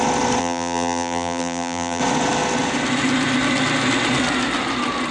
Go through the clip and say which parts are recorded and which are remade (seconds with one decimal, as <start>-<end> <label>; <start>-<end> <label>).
0.0-0.4 recorded; 0.4-2.0 remade; 2.0-5.1 recorded